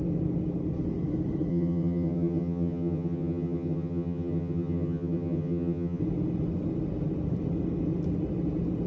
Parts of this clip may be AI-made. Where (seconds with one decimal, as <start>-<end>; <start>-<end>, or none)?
1.5-6.0